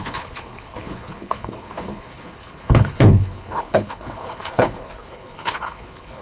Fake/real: fake